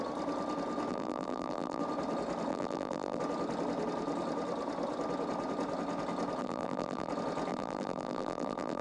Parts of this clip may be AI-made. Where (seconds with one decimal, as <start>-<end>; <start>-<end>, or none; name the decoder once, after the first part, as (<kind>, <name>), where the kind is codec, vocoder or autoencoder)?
0.9-1.8 (vocoder, BigVGAN v2); 2.5-3.2; 6.4-7.1; 7.5-8.8